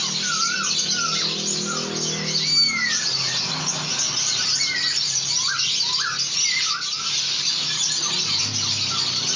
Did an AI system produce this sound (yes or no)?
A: no